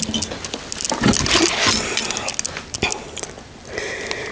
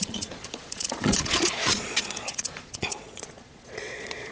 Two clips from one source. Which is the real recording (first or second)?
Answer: first